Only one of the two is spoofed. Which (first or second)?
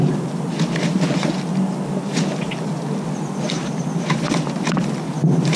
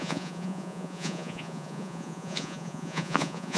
second